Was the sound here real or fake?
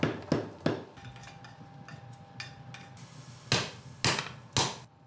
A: real